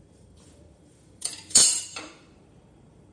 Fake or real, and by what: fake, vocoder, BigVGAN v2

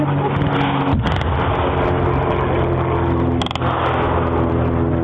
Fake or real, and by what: real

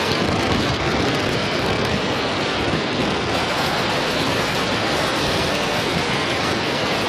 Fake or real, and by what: fake, codec, SNAC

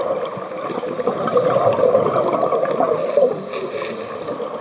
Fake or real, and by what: real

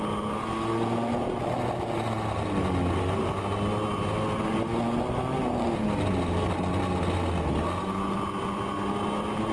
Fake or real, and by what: real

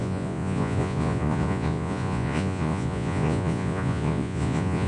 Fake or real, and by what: fake, vocoder, Vocos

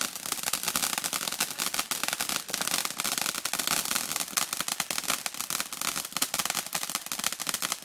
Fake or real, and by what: real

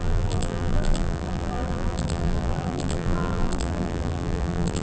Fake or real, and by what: fake, vocoder, BigVGAN v2